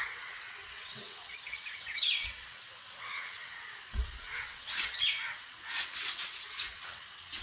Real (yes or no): no